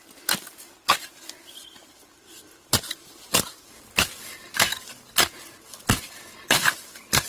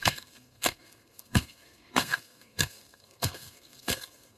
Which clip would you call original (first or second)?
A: first